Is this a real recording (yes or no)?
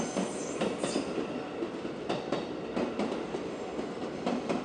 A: yes